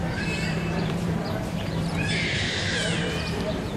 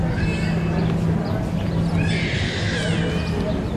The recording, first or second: second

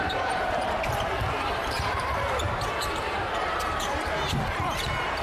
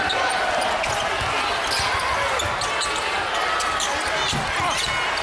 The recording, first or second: second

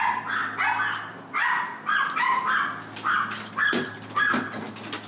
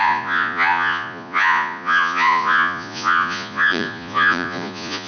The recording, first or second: first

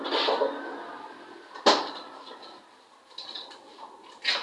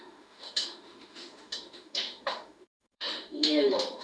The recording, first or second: first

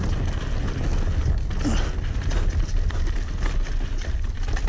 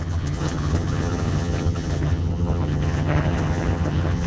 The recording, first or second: first